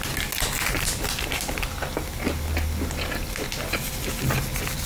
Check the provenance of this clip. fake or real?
real